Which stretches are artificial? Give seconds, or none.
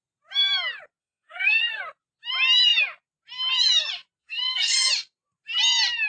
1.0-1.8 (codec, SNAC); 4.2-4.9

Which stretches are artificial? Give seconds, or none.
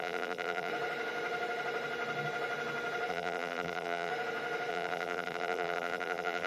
0.0-0.7 (vocoder, BigVGAN v2); 3.1-4.1; 4.7-6.5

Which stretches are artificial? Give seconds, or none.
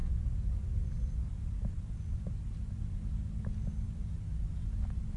none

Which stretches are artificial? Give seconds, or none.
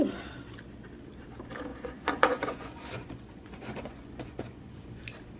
1.7-4.9 (vocoder, Vocos)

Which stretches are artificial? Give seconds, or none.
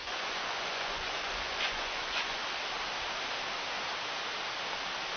0.0-2.4 (vocoder, Vocos)